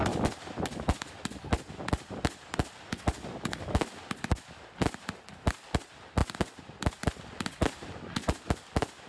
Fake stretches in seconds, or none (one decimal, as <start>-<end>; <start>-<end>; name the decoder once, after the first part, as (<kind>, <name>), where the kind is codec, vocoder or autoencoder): none